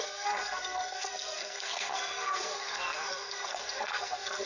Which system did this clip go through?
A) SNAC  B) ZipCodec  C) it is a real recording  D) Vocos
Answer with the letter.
A